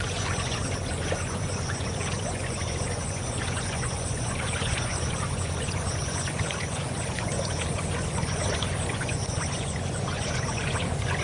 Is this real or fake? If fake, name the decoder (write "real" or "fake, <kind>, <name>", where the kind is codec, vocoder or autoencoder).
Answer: fake, vocoder, Vocos